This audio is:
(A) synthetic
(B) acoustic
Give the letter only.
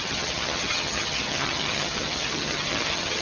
A